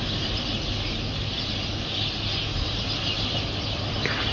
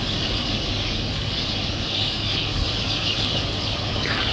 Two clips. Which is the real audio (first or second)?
first